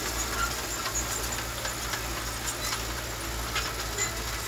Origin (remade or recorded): recorded